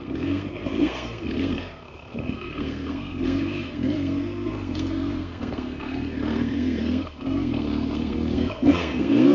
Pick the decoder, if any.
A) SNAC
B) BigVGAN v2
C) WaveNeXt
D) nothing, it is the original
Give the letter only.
A